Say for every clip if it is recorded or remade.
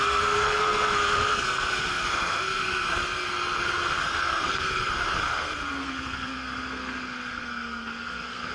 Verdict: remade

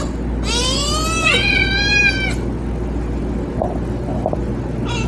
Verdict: recorded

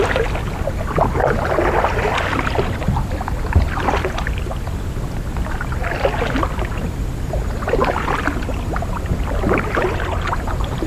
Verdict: recorded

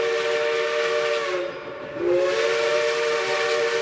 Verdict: recorded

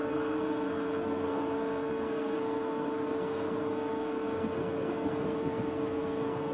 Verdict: remade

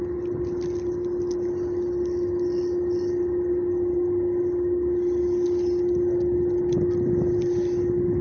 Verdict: recorded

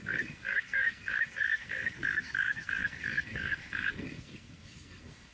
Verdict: remade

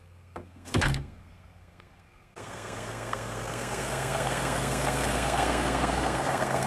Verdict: remade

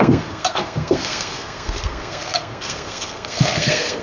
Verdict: remade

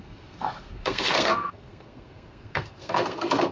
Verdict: remade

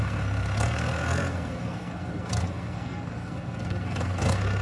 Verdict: remade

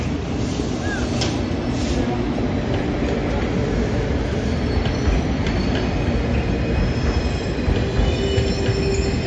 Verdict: recorded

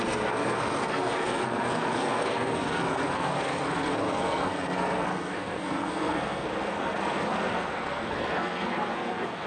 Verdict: remade